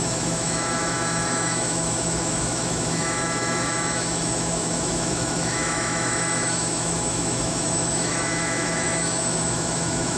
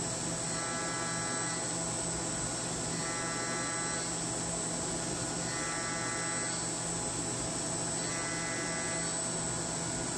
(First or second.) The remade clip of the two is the first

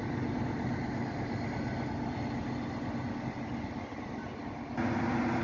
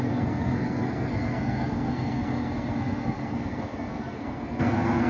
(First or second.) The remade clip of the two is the second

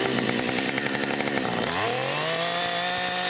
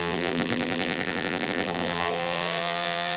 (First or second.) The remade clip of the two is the second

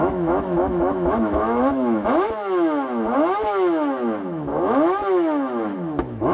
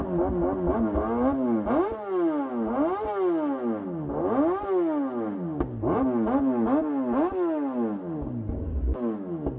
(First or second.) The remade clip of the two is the first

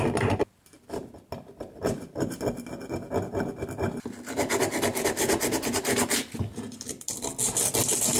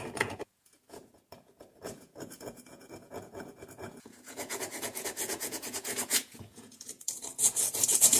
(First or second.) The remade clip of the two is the second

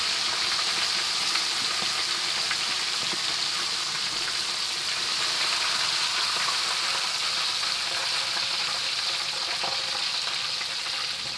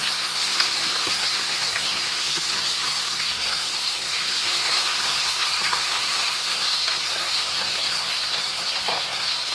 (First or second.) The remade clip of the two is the second